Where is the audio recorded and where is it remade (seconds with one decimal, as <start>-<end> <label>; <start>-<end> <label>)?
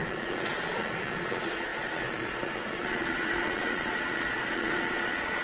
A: 0.0-5.4 remade